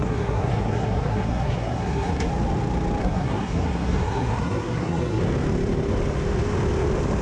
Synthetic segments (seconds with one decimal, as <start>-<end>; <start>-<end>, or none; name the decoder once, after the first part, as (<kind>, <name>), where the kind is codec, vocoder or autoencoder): 0.0-2.3 (codec, SNAC); 3.0-5.2